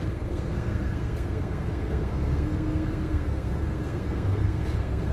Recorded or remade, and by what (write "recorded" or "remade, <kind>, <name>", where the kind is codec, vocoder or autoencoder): remade, codec, SNAC